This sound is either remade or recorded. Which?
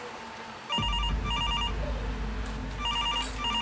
recorded